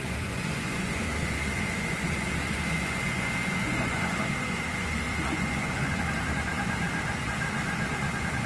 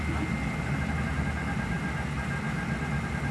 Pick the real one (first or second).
second